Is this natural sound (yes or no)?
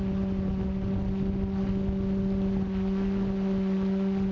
yes